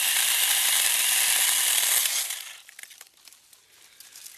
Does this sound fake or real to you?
real